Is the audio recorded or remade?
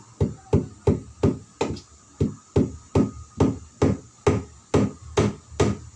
recorded